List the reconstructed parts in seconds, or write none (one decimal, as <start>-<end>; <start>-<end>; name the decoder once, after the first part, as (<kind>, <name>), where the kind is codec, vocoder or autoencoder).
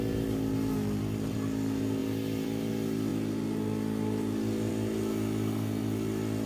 2.0-2.7 (vocoder, BigVGAN v2)